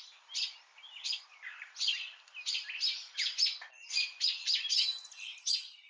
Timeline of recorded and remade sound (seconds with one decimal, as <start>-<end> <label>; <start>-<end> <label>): 0.0-5.9 recorded